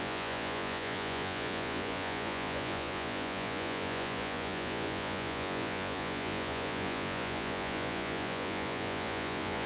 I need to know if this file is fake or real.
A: fake